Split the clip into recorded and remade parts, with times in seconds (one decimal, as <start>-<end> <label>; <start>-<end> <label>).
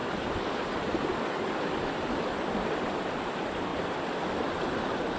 0.0-2.4 remade; 2.4-3.7 recorded; 3.7-4.3 remade; 4.3-5.2 recorded